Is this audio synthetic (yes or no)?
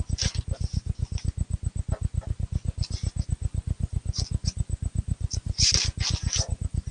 no